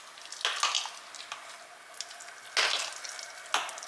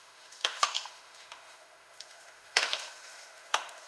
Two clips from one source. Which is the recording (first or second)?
first